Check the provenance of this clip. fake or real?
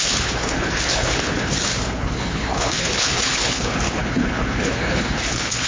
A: fake